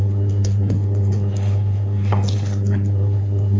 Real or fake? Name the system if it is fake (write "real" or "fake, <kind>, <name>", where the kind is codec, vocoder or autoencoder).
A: fake, codec, SNAC